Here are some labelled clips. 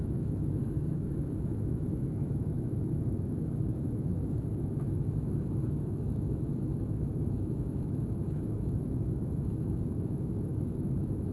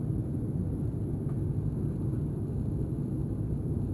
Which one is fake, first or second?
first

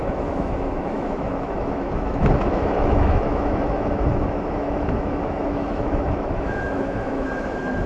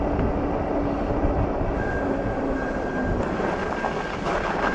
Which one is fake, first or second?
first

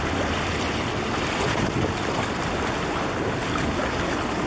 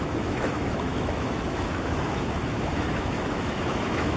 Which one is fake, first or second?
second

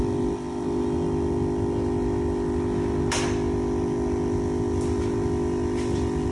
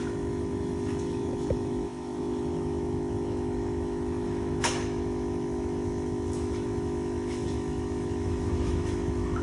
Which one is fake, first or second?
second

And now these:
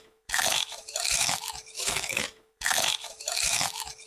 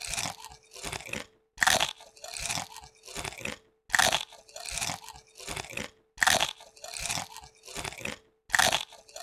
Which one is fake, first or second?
first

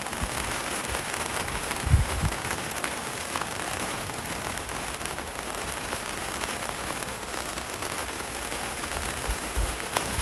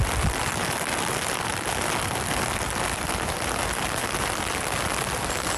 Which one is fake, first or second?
first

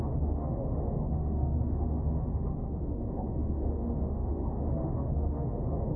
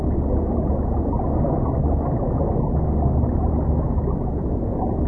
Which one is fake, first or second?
first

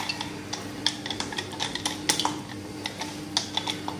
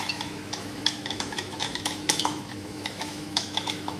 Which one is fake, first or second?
second